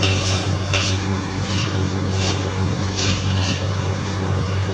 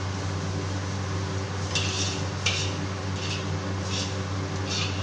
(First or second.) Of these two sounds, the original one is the second